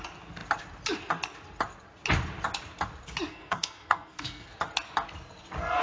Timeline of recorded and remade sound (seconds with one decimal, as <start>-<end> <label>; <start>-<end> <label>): 0.0-3.3 recorded; 3.3-4.5 remade; 4.5-5.8 recorded